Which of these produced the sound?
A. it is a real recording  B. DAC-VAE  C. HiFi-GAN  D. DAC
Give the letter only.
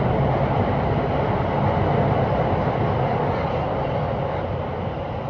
A